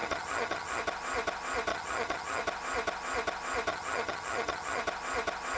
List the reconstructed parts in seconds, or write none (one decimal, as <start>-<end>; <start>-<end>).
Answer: 0.0-0.8; 1.7-2.4; 3.7-4.8